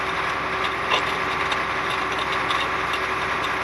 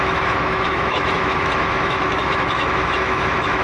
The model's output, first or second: second